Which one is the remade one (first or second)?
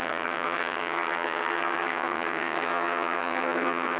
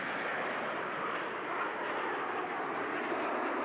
first